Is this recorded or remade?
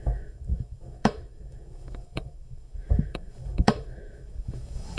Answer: remade